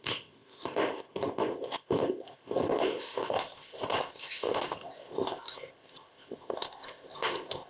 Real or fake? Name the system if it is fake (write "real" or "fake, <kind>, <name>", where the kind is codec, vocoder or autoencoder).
fake, codec, ZipCodec